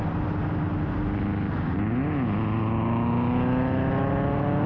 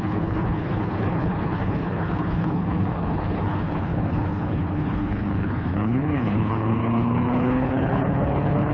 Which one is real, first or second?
first